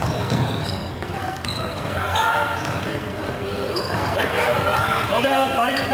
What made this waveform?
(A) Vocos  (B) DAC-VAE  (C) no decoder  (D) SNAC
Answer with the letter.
D